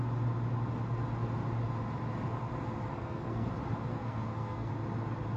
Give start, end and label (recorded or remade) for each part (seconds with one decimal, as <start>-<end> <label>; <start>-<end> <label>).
0.0-2.9 recorded; 2.9-3.5 remade; 3.5-3.9 recorded; 3.9-4.7 remade; 4.7-5.4 recorded

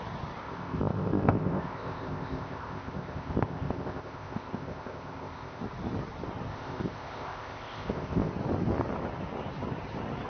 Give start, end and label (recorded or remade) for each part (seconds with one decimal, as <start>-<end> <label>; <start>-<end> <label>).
0.0-0.4 recorded; 0.4-5.6 remade; 5.6-6.5 recorded; 6.5-8.3 remade; 8.3-10.3 recorded